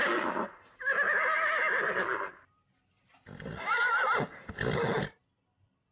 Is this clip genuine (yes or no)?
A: yes